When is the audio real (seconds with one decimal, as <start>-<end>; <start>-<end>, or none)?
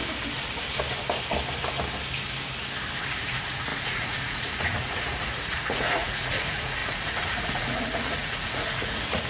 0.0-3.2